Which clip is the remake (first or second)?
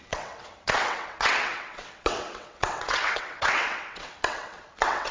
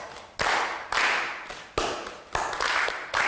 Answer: first